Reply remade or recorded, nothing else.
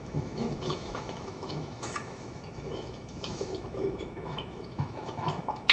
remade